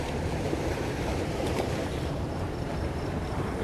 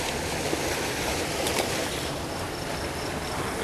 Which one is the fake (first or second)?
first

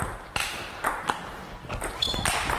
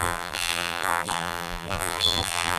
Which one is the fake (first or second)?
second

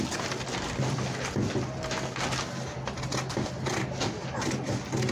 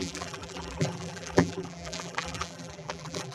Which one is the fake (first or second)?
second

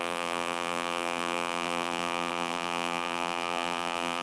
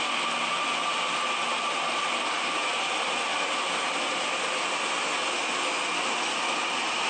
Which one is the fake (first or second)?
first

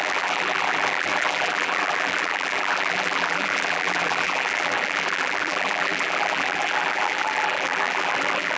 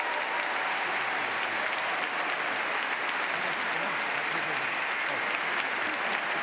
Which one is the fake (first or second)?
first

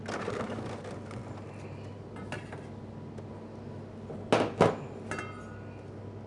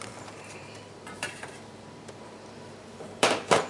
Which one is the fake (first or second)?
second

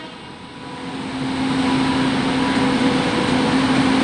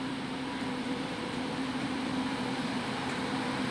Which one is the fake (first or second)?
second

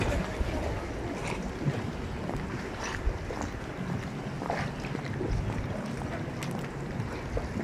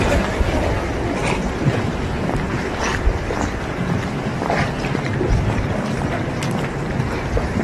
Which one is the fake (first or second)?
second